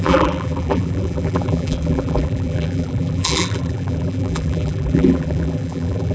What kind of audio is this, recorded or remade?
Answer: remade